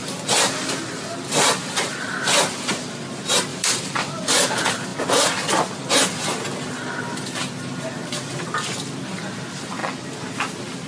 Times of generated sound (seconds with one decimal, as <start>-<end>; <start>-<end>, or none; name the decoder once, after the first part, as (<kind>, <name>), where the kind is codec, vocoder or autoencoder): 3.5-4.1 (vocoder, BigVGAN v2)